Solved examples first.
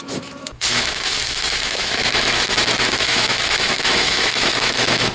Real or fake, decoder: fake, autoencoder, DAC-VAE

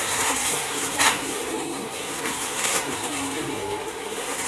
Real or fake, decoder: fake, codec, SNAC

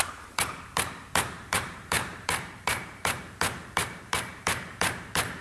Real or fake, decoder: fake, vocoder, BigVGAN v2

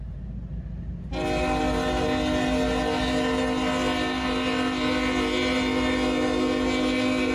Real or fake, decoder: real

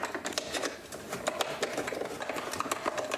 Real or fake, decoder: real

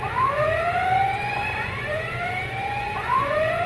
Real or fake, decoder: fake, vocoder, Vocos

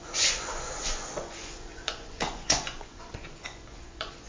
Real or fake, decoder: fake, vocoder, Vocos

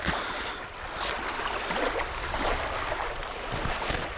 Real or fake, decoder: real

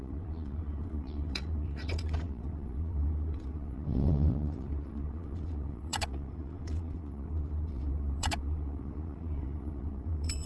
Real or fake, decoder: fake, vocoder, WaveNeXt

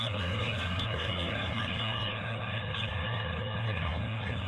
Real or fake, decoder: fake, codec, SNAC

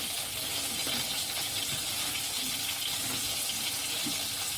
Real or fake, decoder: real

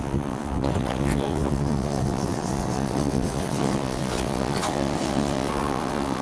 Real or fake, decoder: fake, vocoder, WaveNeXt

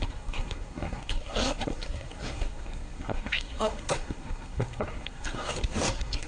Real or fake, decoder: fake, codec, SNAC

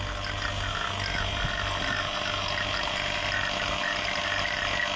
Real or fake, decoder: real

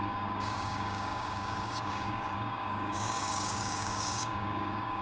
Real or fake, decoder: fake, codec, DAC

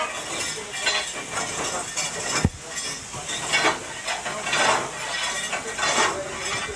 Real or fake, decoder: real